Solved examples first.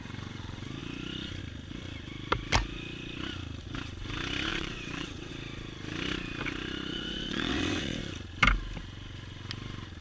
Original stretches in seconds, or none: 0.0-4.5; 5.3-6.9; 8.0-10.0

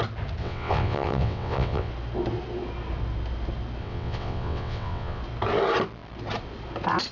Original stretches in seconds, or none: 0.0-0.4; 1.9-3.8; 5.2-7.1

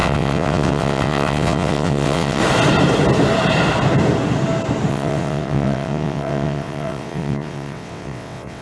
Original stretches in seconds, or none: 2.4-4.9

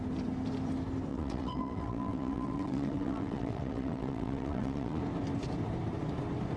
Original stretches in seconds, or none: 0.0-1.1; 5.0-6.6

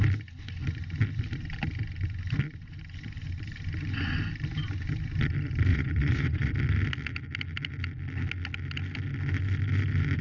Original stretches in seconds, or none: 0.0-5.7; 6.5-10.2